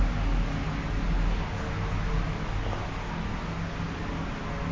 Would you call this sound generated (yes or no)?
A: no